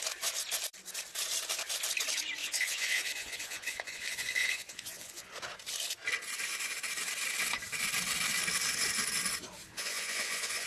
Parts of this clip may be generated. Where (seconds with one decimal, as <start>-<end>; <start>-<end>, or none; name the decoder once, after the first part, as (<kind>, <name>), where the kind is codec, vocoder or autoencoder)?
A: 2.4-5.3 (vocoder, Vocos); 9.7-10.7